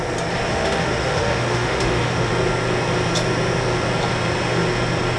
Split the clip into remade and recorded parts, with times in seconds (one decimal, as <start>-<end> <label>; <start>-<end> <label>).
0.0-0.5 recorded; 0.5-2.3 remade; 2.3-5.2 recorded